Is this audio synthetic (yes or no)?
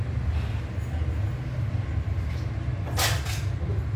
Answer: no